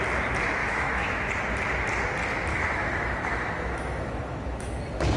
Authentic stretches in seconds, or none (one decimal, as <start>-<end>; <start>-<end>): 0.0-0.6; 1.3-2.5; 4.8-5.2